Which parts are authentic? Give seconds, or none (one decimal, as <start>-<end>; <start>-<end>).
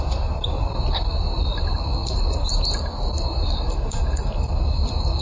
0.0-5.2